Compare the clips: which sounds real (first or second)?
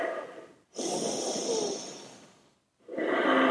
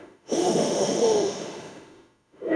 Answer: first